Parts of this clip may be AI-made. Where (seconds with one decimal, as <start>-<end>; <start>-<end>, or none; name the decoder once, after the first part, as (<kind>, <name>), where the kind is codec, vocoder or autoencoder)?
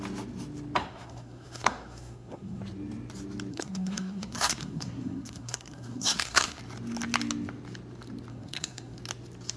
0.8-2.6 (codec, SNAC); 3.5-6.6; 8.3-9.0